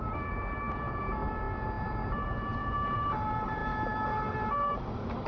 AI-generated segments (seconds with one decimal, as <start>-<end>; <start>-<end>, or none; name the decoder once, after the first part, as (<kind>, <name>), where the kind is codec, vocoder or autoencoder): 0.0-1.2 (vocoder, BigVGAN v2); 1.9-5.3